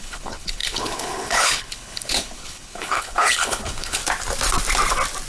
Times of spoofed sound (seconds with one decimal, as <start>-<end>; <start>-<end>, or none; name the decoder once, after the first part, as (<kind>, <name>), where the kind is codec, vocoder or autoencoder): 0.0-4.0 (codec, HILCodec)